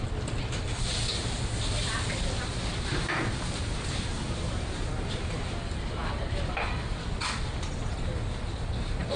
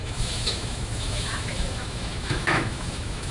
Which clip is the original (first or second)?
first